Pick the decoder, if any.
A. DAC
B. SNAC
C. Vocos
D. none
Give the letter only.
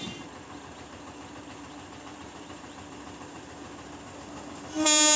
D